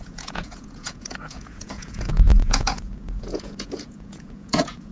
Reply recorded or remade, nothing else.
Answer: remade